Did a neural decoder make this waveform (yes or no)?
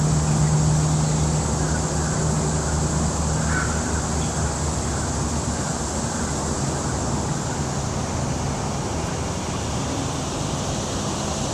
no